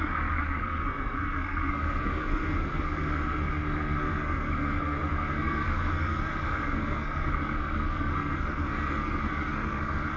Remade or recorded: remade